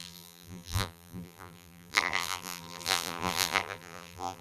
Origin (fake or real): fake